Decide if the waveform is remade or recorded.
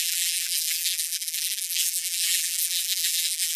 remade